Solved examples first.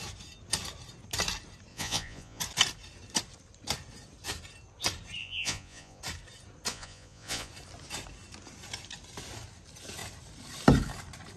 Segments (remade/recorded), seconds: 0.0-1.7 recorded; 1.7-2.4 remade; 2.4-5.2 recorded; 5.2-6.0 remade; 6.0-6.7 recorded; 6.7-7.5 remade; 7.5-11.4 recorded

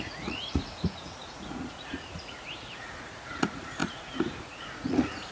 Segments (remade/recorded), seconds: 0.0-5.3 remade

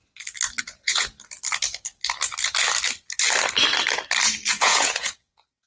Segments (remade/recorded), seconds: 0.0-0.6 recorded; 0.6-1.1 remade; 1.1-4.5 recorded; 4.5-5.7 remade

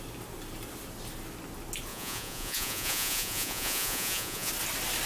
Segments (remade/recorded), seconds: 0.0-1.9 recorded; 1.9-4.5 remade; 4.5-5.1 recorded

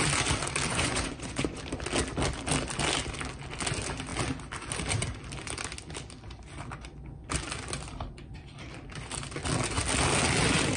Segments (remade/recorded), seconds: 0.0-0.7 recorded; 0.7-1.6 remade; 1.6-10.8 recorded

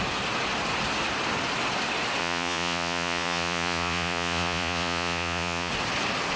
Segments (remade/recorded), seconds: 0.0-2.2 recorded; 2.2-5.7 remade; 5.7-6.4 recorded